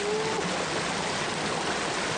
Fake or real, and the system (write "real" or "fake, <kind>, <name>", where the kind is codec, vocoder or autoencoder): real